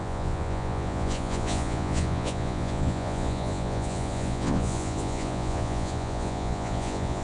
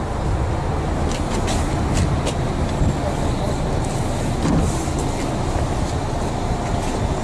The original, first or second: second